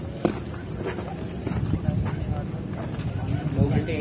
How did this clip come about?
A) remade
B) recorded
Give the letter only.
B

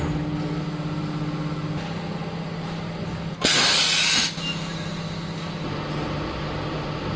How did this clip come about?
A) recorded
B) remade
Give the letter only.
A